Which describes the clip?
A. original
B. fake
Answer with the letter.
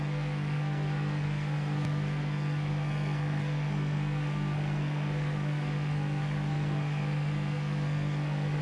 B